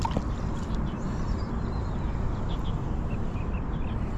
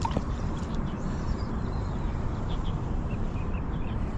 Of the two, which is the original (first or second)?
first